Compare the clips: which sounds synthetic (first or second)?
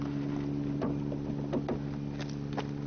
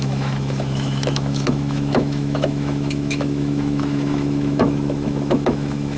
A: second